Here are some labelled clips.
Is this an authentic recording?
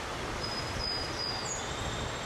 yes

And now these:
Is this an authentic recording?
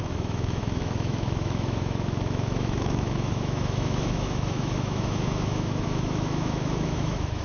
no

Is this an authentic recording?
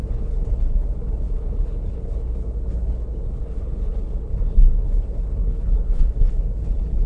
no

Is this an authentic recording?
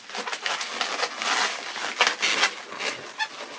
yes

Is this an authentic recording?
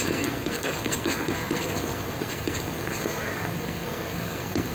no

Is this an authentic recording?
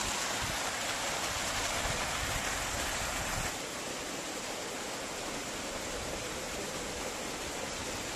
yes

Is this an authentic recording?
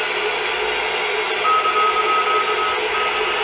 yes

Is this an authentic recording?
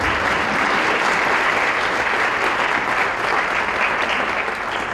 yes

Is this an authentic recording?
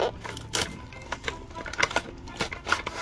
yes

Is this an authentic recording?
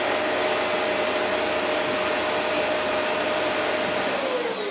yes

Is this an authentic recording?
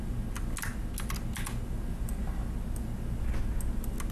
yes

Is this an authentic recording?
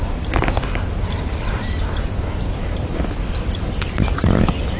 no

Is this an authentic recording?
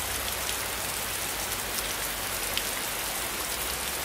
yes